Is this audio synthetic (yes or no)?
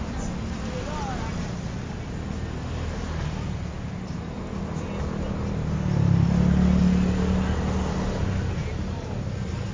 no